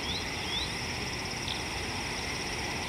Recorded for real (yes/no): yes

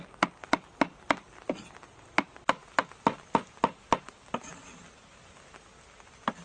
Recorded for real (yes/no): yes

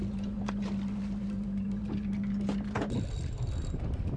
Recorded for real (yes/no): yes